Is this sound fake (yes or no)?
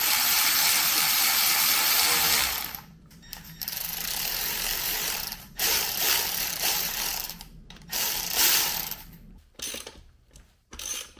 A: yes